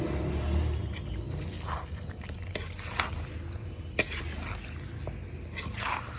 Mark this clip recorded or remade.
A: recorded